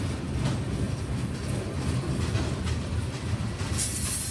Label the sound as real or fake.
real